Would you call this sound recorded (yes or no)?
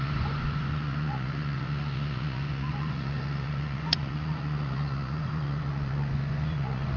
no